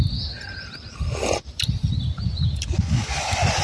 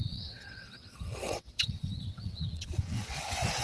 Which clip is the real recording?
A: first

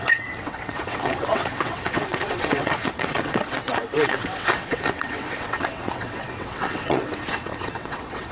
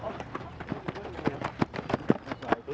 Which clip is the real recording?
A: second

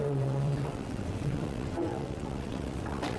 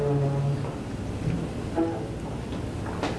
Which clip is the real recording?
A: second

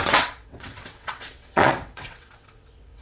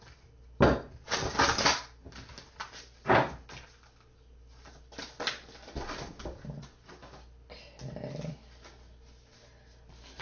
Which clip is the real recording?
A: second